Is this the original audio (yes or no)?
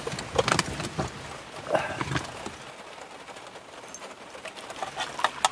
yes